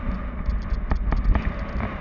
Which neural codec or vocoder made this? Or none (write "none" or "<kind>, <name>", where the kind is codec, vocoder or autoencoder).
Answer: none